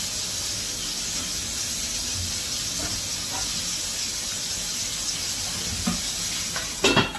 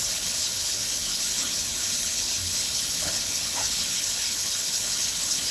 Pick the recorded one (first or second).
first